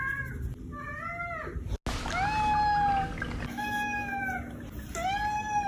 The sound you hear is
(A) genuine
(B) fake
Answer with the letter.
A